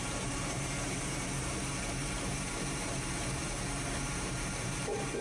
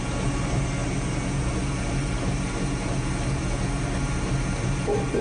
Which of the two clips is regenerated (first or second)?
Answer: first